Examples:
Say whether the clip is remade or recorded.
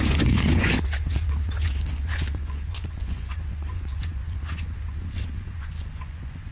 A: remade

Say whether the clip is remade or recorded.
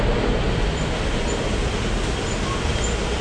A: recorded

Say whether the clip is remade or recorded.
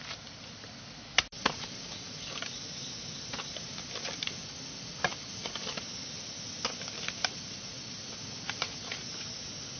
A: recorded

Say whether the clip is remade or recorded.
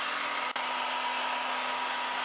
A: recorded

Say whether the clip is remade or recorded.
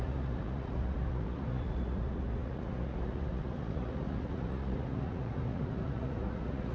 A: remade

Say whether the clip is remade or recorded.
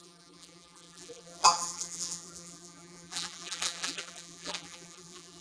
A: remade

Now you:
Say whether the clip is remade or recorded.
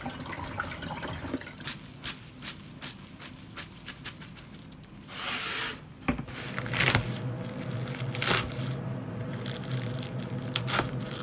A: recorded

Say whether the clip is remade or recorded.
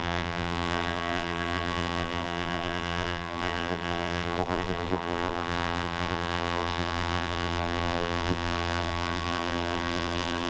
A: remade